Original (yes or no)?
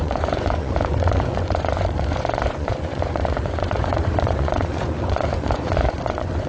no